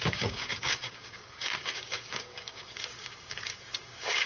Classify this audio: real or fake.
fake